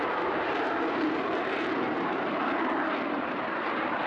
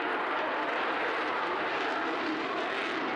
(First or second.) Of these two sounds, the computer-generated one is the first